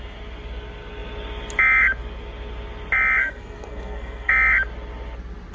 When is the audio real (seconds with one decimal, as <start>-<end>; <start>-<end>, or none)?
0.0-3.2; 4.3-5.5